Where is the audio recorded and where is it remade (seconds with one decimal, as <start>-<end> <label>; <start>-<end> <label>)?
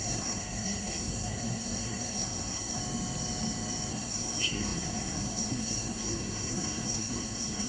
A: 0.0-2.8 remade; 2.8-3.9 recorded; 3.9-7.7 remade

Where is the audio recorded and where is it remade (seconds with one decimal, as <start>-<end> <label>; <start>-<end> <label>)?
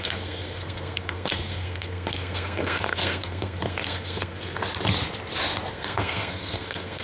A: 0.0-4.6 remade; 4.6-5.7 recorded; 5.7-7.0 remade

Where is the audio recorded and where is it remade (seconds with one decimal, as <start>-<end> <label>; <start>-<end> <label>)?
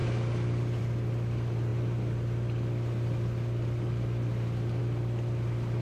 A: 0.0-5.8 recorded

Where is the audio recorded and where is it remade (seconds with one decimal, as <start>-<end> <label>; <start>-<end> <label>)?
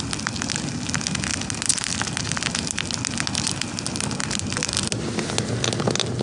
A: 0.0-6.2 recorded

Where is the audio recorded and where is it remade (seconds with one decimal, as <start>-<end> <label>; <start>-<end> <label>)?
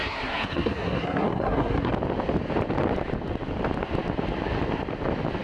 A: 0.0-1.9 remade; 1.9-5.4 recorded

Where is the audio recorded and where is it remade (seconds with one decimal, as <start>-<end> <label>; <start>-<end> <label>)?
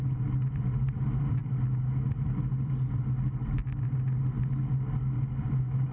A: 0.0-5.9 recorded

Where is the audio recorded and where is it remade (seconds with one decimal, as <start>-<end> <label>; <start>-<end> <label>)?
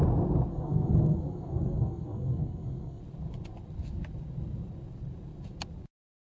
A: 0.0-0.5 recorded; 0.5-3.0 remade; 3.0-6.3 recorded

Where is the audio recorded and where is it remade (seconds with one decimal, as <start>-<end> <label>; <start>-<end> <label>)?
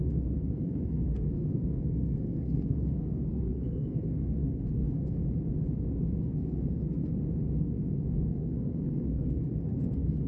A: 0.0-5.2 remade; 5.2-6.2 recorded; 6.2-7.0 remade; 7.0-7.6 recorded; 7.6-10.3 remade